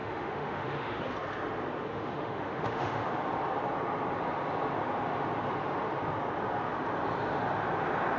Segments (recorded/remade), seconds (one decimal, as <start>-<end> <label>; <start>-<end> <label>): 0.0-1.0 remade; 1.0-1.9 recorded; 1.9-3.1 remade; 3.1-8.2 recorded